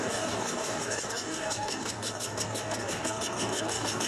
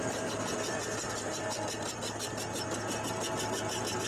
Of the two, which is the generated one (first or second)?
first